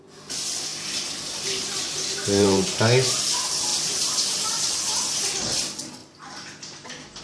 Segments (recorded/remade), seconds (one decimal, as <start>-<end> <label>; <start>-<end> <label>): 0.0-0.7 recorded; 0.7-2.8 remade; 2.8-3.7 recorded; 3.7-4.6 remade; 4.6-6.0 recorded; 6.0-7.2 remade